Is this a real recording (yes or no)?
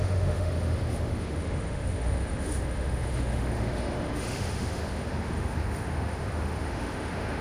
no